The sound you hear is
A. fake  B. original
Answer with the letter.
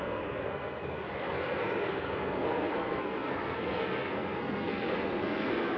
A